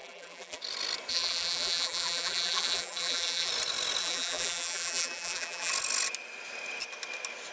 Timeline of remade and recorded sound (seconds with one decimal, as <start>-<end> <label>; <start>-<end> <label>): 0.0-0.6 remade; 0.6-1.1 recorded; 1.1-3.5 remade; 3.5-4.0 recorded; 4.0-5.7 remade; 5.7-7.5 recorded